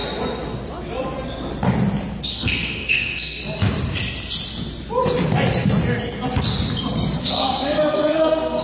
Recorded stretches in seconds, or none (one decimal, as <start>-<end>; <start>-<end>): 0.0-2.3; 3.4-7.2